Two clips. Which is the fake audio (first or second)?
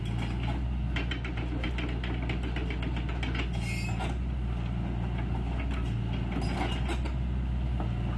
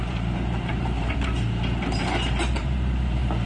second